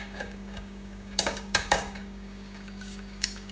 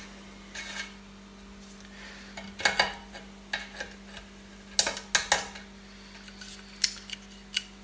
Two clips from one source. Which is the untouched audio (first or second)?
second